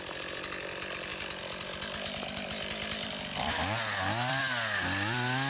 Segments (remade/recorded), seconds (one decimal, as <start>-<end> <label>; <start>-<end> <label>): 0.0-1.1 recorded; 1.1-4.4 remade; 4.4-5.5 recorded